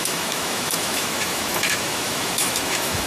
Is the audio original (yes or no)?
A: no